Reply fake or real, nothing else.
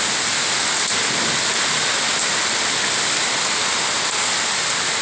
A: real